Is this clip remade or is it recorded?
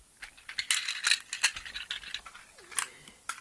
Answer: recorded